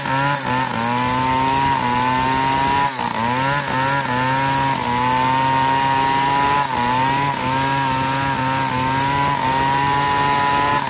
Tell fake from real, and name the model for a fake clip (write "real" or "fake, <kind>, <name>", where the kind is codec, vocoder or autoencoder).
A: real